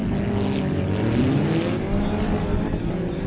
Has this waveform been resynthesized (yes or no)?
no